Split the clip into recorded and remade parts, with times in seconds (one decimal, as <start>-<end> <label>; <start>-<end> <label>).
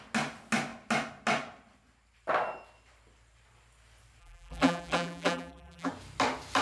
0.0-4.2 recorded; 4.2-5.9 remade; 5.9-6.6 recorded